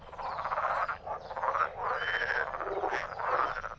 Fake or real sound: real